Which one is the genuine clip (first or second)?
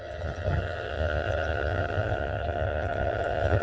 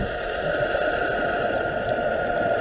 second